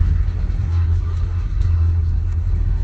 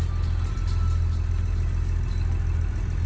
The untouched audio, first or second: second